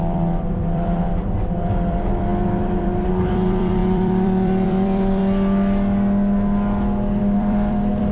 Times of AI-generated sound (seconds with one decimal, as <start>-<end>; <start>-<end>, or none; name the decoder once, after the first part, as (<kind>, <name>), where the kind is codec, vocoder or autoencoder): 0.0-5.2 (vocoder, BigVGAN v2); 7.2-8.1